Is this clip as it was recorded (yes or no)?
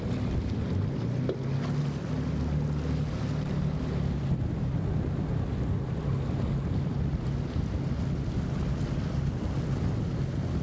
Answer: yes